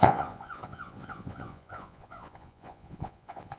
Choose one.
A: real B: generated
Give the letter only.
B